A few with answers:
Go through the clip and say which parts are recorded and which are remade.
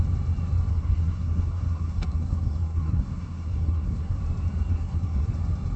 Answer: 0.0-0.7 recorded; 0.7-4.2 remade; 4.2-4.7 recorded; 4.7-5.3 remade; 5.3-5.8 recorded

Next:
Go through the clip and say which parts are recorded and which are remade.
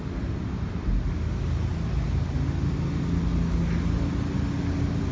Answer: 0.0-5.1 recorded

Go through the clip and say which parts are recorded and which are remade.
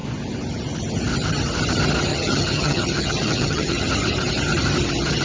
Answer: 0.0-2.1 recorded; 2.1-3.9 remade; 3.9-5.2 recorded